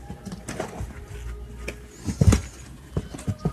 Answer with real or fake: real